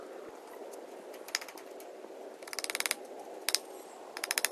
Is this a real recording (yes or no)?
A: yes